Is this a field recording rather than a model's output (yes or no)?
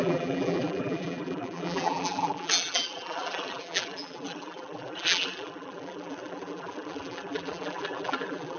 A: no